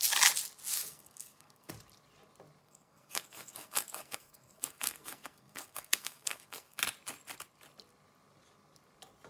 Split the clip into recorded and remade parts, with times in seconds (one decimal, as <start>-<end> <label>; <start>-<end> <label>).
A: 0.0-0.7 recorded; 0.7-1.7 remade; 1.7-2.6 recorded; 2.6-6.8 remade; 6.8-9.3 recorded